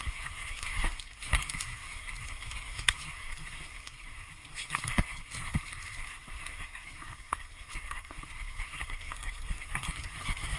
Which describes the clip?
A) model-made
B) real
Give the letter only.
A